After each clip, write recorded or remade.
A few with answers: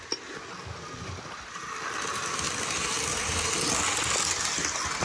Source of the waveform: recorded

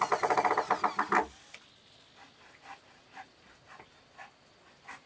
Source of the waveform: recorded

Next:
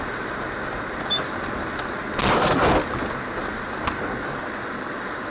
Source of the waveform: recorded